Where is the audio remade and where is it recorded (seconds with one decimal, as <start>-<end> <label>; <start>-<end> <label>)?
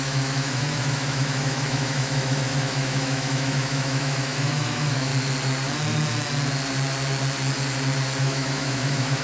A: 0.0-5.1 remade; 5.1-8.2 recorded; 8.2-9.2 remade